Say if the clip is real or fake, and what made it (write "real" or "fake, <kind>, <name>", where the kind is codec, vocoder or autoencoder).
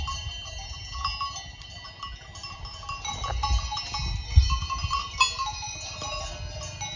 real